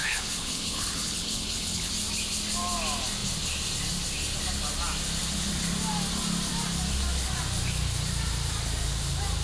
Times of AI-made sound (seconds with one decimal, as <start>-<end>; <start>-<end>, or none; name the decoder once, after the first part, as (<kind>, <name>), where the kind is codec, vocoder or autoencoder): 0.0-1.9 (codec, HILCodec)